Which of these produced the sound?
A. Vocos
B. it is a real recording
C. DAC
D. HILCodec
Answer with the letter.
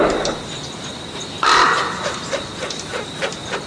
B